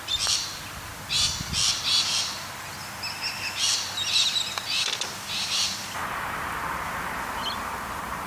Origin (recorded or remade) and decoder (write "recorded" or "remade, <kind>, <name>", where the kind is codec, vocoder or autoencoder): recorded